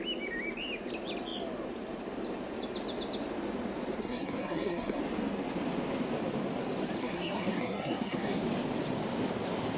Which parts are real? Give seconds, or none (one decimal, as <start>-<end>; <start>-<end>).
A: 0.0-4.0; 5.0-7.0; 8.4-9.8